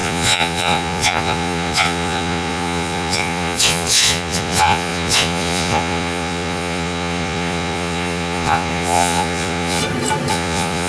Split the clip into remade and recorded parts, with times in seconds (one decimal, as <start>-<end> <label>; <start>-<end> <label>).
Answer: 0.0-9.8 remade; 9.8-10.3 recorded; 10.3-10.9 remade